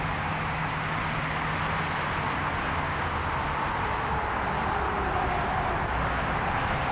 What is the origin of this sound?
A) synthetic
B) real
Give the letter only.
B